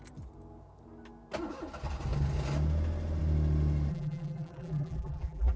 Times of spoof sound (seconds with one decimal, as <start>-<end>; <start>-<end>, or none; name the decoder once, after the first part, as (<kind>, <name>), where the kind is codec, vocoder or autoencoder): 3.9-5.6 (vocoder, BigVGAN v2)